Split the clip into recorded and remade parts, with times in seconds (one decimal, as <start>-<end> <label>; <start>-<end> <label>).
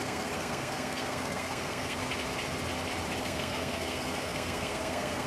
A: 0.0-2.0 remade; 2.0-3.2 recorded; 3.2-5.3 remade